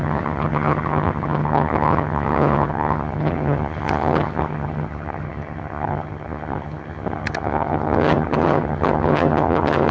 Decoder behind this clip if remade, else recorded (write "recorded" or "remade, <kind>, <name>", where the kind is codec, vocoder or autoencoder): remade, vocoder, HiFi-GAN